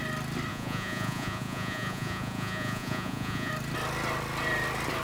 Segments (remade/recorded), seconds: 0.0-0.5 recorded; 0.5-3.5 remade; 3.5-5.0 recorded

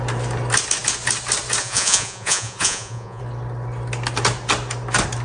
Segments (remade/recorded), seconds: 0.0-1.6 recorded; 1.6-3.2 remade; 3.2-5.2 recorded

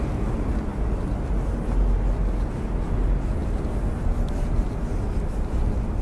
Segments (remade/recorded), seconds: 0.0-6.0 recorded